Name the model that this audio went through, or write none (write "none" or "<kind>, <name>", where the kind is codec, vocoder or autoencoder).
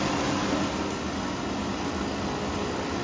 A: none